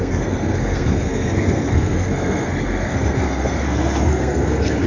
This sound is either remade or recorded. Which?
remade